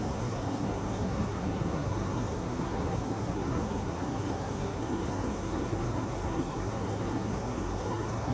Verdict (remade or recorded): remade